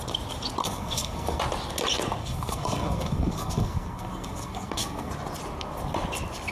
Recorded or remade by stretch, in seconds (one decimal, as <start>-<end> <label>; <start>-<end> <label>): 0.0-0.6 recorded; 0.6-1.4 remade; 1.4-2.2 recorded; 2.2-5.1 remade; 5.1-6.5 recorded